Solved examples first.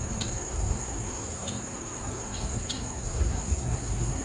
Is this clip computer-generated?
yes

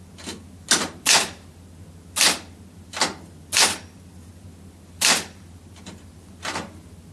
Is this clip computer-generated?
no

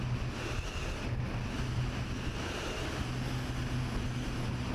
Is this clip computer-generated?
no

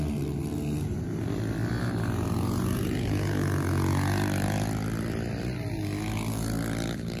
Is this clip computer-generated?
no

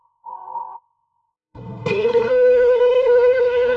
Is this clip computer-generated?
yes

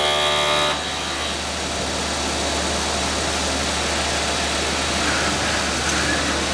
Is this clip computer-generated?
no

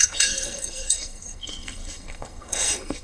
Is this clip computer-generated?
yes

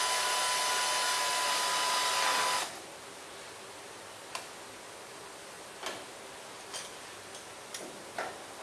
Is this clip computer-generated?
no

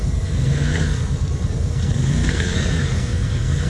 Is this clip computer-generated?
yes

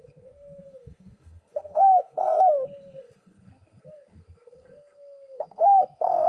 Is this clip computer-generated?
yes